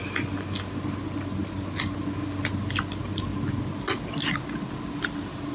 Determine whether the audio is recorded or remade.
recorded